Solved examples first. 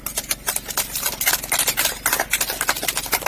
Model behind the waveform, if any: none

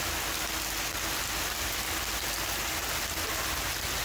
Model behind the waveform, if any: none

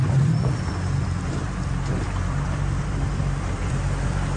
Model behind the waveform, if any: vocoder, BigVGAN v2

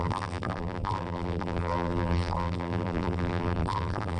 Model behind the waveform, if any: vocoder, BigVGAN v2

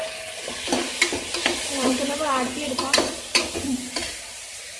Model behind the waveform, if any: vocoder, BigVGAN v2